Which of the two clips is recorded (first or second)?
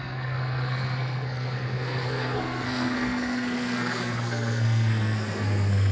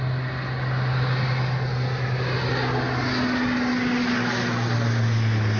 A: second